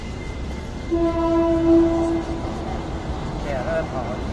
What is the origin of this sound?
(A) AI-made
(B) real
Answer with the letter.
B